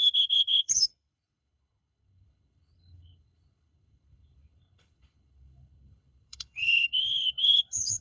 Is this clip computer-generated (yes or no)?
yes